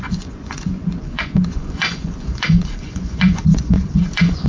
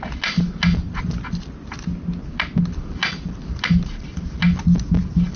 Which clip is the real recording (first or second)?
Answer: second